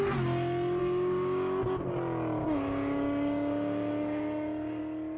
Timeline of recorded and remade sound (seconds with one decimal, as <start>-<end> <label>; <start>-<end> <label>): 0.0-0.8 recorded; 0.8-1.6 remade; 1.6-2.4 recorded; 2.4-4.8 remade; 4.8-5.2 recorded